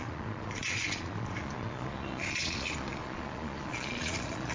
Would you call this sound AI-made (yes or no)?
yes